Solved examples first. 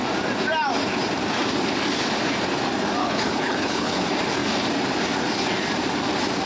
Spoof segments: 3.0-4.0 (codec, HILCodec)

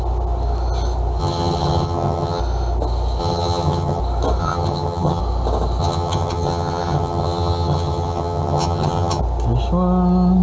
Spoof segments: 1.2-2.4 (vocoder, HiFi-GAN); 3.2-4.0; 4.4-5.2; 5.8-9.2

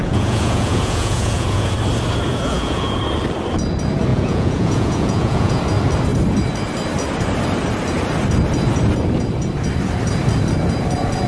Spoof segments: 0.0-1.7 (vocoder, Vocos); 2.3-3.0; 4.1-5.6